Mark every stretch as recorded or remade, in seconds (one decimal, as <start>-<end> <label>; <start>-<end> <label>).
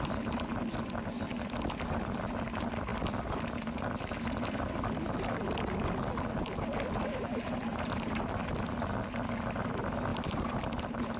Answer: 0.0-7.7 recorded; 7.7-8.3 remade; 8.3-10.1 recorded; 10.1-10.6 remade; 10.6-11.2 recorded